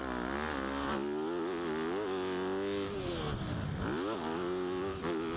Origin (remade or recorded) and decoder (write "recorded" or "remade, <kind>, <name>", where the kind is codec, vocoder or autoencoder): recorded